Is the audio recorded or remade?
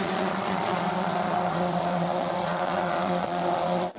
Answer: remade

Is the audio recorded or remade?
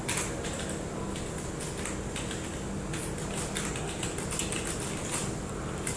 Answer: recorded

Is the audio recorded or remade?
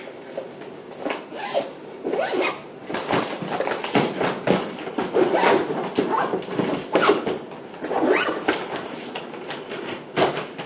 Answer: recorded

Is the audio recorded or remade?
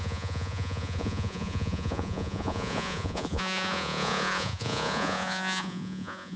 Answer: remade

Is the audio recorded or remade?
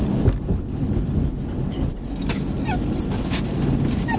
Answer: recorded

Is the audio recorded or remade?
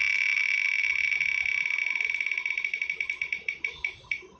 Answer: recorded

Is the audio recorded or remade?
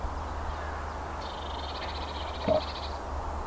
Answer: recorded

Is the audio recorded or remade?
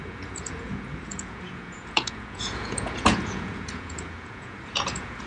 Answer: remade